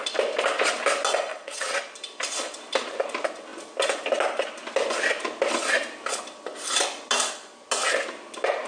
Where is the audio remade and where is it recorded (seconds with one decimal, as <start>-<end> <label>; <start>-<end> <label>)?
0.0-1.3 recorded; 1.3-1.8 remade; 1.8-8.7 recorded